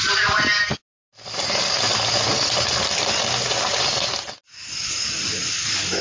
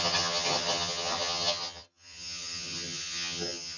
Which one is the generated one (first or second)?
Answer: second